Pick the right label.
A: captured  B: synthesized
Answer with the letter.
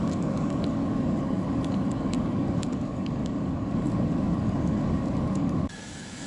B